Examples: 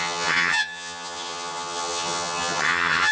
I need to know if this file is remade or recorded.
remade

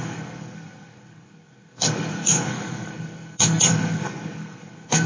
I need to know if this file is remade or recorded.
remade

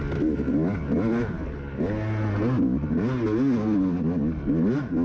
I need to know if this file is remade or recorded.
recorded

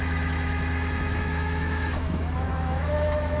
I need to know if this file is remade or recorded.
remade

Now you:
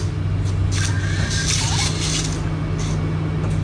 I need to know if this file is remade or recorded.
recorded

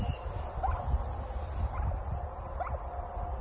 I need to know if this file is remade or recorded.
recorded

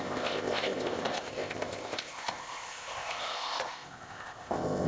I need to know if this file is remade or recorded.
remade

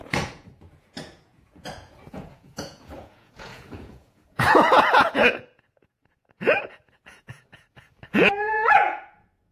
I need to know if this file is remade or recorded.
remade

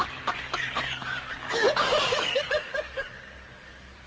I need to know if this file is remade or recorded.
remade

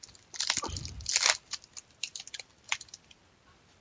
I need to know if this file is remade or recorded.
recorded